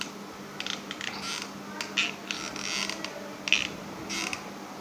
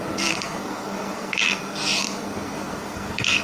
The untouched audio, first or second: first